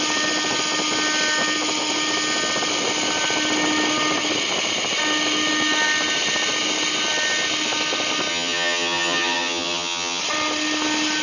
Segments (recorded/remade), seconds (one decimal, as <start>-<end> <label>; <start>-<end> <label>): 0.0-8.3 recorded; 8.3-10.2 remade; 10.2-11.2 recorded